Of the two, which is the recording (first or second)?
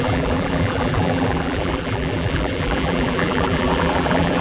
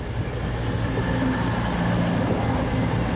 second